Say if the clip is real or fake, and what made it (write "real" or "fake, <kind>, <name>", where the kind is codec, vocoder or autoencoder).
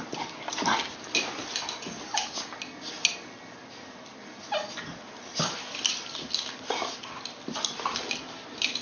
real